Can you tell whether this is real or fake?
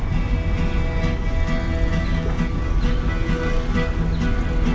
real